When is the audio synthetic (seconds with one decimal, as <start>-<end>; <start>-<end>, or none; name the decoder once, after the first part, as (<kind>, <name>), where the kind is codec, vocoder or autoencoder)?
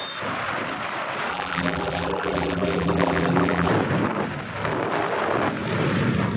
1.3-3.7 (vocoder, BigVGAN v2)